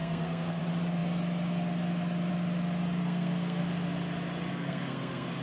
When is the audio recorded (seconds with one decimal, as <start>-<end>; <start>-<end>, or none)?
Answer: 0.6-3.0; 3.6-4.5